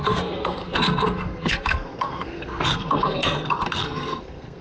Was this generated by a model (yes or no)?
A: yes